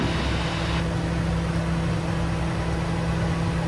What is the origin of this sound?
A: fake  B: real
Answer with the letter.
B